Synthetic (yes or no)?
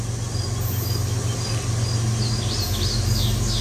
no